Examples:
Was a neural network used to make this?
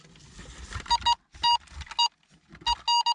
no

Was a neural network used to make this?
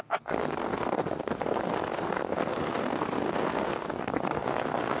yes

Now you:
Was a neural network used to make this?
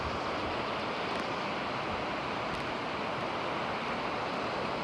no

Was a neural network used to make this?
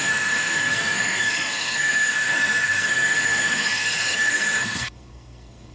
yes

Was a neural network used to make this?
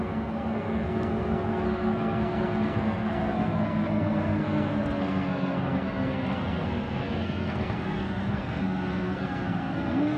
yes